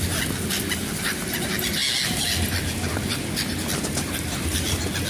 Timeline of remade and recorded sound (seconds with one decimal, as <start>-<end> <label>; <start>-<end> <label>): 0.0-5.1 recorded